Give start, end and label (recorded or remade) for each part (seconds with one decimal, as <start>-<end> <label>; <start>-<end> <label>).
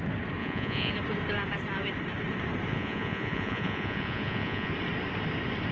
0.0-0.4 recorded; 0.4-0.9 remade; 0.9-2.7 recorded; 2.7-4.7 remade; 4.7-5.7 recorded